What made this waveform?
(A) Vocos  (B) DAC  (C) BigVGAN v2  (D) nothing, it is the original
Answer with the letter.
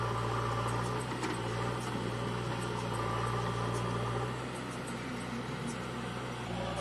D